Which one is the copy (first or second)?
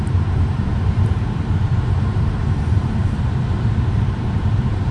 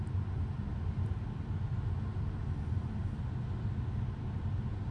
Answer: first